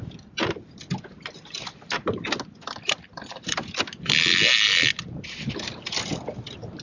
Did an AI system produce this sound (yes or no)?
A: no